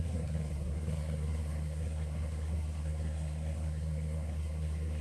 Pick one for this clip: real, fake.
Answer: fake